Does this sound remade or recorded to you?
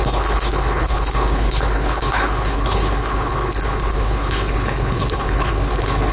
remade